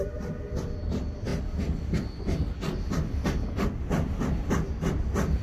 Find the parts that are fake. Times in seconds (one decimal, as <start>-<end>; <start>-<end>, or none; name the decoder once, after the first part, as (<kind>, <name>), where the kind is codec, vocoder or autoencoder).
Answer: none